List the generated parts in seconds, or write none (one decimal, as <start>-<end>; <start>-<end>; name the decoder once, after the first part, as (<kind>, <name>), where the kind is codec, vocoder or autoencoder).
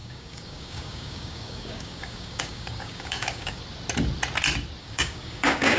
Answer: 0.0-3.6 (codec, DAC); 4.8-5.8